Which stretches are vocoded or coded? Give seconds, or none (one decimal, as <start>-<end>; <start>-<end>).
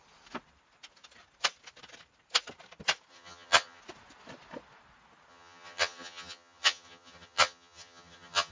3.1-3.8; 5.3-8.5